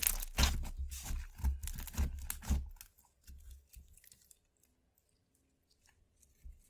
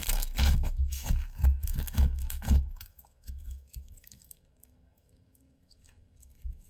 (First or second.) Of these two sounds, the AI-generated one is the second